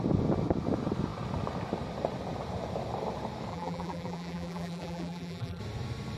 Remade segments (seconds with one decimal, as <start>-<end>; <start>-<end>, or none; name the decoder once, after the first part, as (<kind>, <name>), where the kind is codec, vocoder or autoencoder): 3.5-5.6 (vocoder, BigVGAN v2)